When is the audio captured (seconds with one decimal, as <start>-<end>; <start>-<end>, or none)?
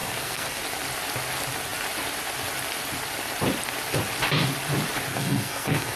0.6-5.1